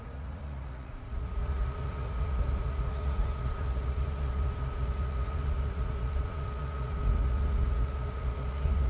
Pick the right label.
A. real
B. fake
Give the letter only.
B